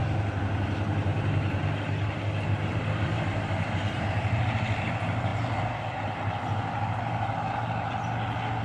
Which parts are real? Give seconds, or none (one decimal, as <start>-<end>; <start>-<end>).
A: 0.0-1.1; 4.4-8.6